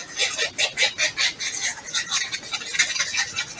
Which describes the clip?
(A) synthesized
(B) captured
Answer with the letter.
B